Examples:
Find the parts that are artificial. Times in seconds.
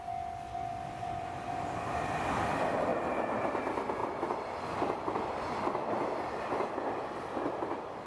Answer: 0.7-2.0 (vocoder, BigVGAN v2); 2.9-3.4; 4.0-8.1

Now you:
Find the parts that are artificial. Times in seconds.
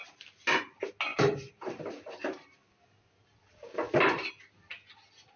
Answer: 1.1-4.3 (vocoder, BigVGAN v2)